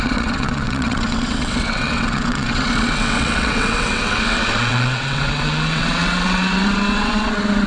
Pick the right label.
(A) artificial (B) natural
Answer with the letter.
A